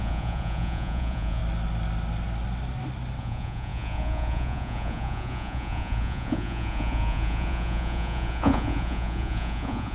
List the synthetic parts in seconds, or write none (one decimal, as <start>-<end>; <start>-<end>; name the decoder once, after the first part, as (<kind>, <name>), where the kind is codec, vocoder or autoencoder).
0.0-1.4 (vocoder, Vocos); 3.2-9.9